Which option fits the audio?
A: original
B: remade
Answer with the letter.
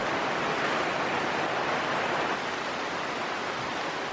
A